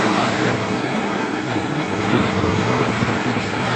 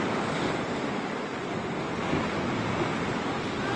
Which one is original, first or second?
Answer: second